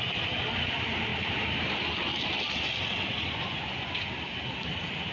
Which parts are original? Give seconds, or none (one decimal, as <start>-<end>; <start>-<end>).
0.0-3.1; 3.9-5.1